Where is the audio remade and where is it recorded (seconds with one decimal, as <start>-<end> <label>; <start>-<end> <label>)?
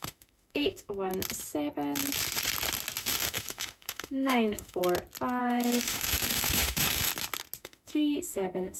0.0-1.1 remade; 1.1-3.0 recorded; 3.0-4.8 remade; 4.8-5.4 recorded; 5.4-7.1 remade; 7.1-7.6 recorded; 7.6-8.8 remade